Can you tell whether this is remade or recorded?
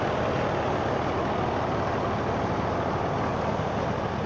recorded